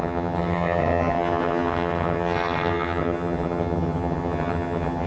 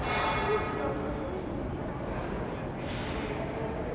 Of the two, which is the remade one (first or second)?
first